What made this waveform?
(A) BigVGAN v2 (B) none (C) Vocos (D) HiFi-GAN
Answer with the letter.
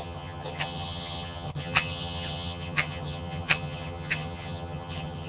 D